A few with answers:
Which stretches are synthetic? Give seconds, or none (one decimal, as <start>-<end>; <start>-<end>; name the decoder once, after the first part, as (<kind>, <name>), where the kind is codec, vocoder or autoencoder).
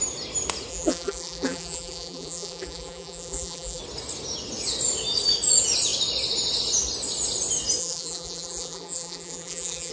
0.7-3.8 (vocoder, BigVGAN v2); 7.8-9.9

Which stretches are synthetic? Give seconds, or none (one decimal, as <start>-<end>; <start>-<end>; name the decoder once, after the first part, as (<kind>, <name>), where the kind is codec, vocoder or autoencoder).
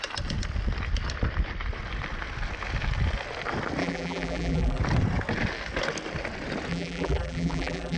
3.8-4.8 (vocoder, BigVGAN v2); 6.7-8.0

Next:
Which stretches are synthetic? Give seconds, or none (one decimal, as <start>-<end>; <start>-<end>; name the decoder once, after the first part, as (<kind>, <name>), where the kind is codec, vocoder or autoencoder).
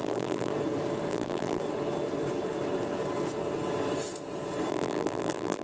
0.0-0.5 (vocoder, BigVGAN v2); 1.1-1.6; 4.7-5.6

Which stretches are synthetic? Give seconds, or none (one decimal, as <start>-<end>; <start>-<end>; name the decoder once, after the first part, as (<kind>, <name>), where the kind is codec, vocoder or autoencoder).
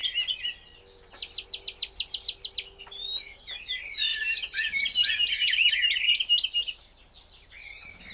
4.1-5.7 (vocoder, BigVGAN v2)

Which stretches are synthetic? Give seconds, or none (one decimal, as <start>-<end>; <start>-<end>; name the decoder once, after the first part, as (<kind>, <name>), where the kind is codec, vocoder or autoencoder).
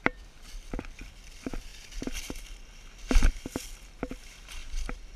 4.6-5.2 (vocoder, BigVGAN v2)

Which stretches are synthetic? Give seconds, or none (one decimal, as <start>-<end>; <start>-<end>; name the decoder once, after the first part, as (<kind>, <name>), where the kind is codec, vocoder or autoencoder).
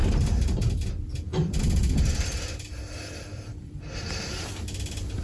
1.3-4.4 (vocoder, BigVGAN v2)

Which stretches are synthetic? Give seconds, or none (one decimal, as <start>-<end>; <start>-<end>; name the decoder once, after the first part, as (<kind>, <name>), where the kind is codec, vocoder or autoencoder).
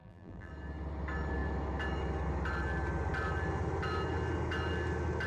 0.0-0.5 (vocoder, BigVGAN v2)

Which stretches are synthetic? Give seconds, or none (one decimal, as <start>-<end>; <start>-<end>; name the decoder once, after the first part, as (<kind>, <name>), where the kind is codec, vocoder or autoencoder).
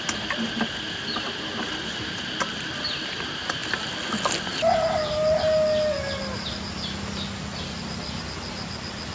none